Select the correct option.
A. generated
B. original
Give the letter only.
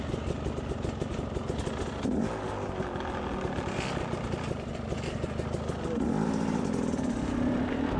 B